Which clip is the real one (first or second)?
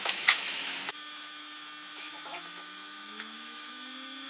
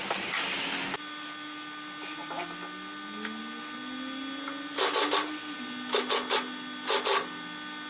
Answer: second